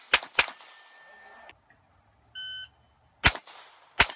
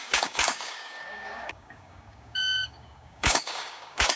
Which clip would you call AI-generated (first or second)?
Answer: second